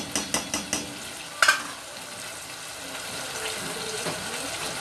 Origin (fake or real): real